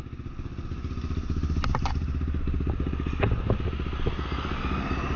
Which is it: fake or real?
real